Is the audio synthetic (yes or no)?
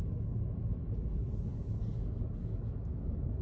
yes